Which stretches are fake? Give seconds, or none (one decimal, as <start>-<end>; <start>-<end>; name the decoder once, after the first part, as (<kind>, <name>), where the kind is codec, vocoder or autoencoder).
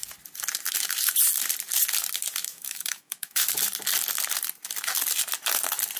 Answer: 2.4-3.5 (autoencoder, DAC-VAE)